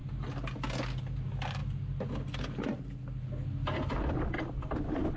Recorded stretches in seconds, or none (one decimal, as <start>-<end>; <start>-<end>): 0.0-5.2